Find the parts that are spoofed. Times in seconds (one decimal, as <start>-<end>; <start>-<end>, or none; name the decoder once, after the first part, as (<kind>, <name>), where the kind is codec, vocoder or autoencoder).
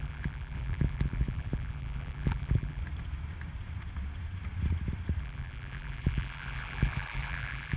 0.0-2.8 (vocoder, BigVGAN v2); 5.2-7.8